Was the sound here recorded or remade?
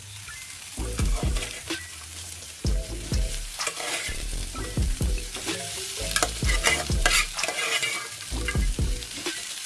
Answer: remade